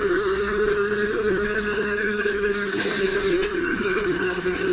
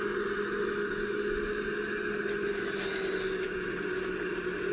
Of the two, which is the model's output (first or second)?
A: first